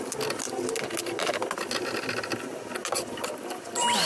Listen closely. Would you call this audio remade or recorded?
recorded